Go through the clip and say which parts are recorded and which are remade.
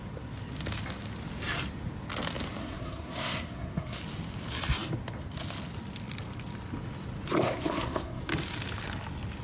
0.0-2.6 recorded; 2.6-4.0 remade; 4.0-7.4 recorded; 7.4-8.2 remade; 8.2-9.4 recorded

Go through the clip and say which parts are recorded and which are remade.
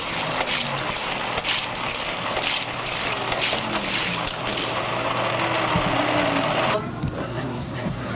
0.0-7.2 recorded; 7.2-8.1 remade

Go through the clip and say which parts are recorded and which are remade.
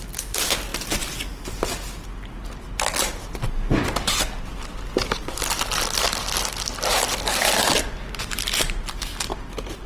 0.0-9.9 recorded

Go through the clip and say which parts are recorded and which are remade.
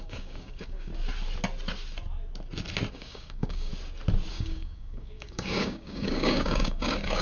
0.0-0.9 remade; 0.9-2.9 recorded; 2.9-3.7 remade; 3.7-4.3 recorded; 4.3-7.2 remade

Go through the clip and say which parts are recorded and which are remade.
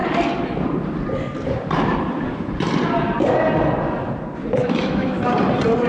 0.0-4.6 recorded; 4.6-5.2 remade; 5.2-5.9 recorded